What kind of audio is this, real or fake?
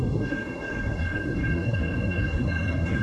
fake